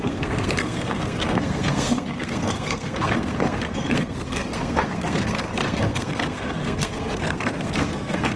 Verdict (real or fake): fake